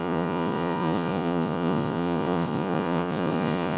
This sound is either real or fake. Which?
fake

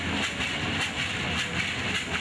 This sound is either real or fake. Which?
real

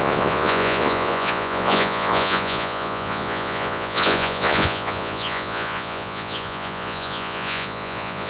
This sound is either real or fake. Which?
fake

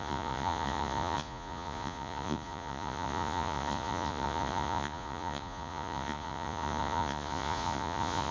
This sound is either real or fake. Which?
fake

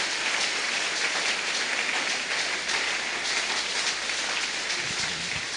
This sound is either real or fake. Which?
real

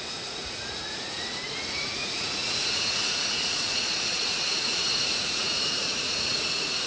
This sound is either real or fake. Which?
fake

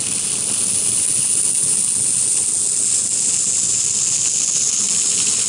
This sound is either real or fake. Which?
real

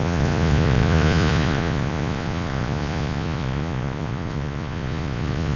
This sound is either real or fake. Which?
fake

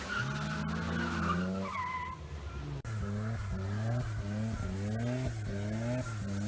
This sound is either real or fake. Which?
real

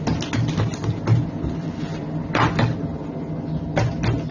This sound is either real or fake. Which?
real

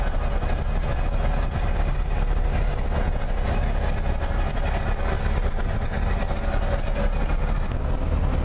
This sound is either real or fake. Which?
real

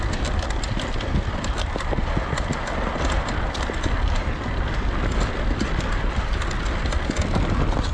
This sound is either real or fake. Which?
real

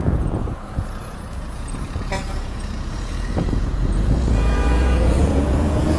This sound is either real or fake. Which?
fake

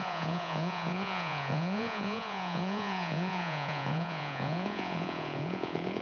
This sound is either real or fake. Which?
fake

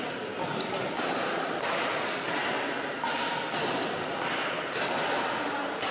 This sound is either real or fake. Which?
real